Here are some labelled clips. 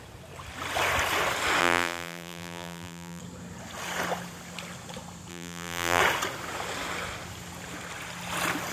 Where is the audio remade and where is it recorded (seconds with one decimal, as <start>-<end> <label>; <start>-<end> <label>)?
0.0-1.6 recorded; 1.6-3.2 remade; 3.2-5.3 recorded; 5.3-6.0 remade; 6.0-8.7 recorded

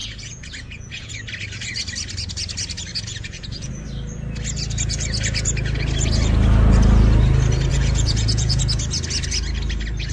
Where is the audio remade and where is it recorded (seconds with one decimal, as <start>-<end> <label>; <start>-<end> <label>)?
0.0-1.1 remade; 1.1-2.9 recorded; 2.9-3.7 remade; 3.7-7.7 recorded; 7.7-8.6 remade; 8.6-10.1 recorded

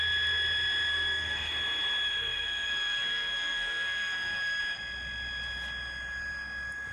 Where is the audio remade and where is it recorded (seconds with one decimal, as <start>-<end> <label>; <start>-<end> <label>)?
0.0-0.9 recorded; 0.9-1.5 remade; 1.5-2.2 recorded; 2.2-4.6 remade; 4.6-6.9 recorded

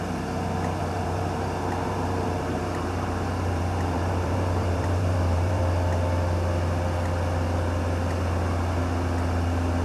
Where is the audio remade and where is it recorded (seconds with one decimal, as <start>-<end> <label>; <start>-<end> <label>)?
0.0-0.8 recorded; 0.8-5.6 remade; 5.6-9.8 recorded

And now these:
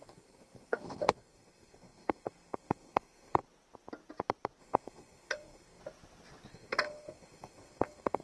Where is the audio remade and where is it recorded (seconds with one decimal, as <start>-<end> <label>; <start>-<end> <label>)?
0.0-3.4 remade; 3.4-4.6 recorded; 4.6-5.8 remade; 5.8-6.5 recorded; 6.5-8.2 remade

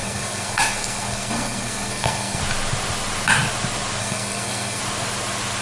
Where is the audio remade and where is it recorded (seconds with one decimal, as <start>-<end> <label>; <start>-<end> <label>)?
0.0-2.4 remade; 2.4-4.0 recorded; 4.0-4.8 remade; 4.8-5.6 recorded

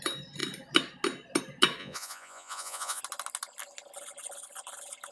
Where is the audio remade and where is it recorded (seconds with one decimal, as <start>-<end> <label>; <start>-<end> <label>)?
0.0-1.8 recorded; 1.8-3.0 remade; 3.0-5.1 recorded

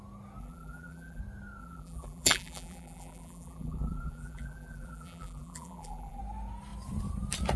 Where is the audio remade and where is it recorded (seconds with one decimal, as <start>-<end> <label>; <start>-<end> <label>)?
0.0-0.4 recorded; 0.4-1.2 remade; 1.2-1.6 recorded; 1.6-6.2 remade; 6.2-7.6 recorded